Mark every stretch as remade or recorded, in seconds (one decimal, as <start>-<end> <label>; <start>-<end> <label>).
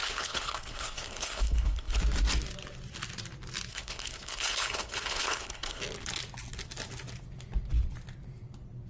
0.0-2.0 remade; 2.0-3.7 recorded; 3.7-5.8 remade; 5.8-8.9 recorded